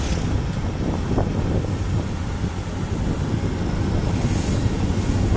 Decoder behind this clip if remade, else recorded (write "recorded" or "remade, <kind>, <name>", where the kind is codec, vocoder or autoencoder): recorded